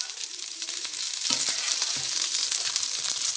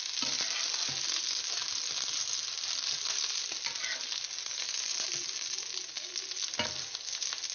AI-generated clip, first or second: first